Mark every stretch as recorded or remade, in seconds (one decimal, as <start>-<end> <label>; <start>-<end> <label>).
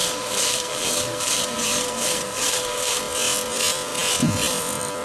0.0-3.0 remade; 3.0-5.0 recorded